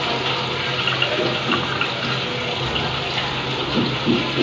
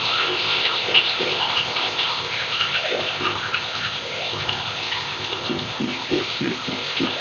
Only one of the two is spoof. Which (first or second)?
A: second